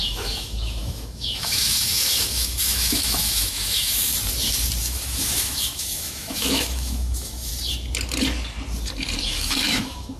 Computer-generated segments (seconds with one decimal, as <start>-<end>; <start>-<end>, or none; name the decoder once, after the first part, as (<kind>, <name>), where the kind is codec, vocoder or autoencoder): 0.0-4.1 (autoencoder, DAC-VAE); 4.8-7.5; 9.2-10.2